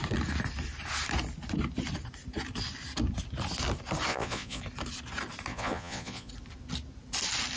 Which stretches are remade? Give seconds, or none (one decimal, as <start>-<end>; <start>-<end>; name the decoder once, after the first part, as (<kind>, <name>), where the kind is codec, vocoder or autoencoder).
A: 4.1-4.6 (vocoder, Vocos); 5.5-6.3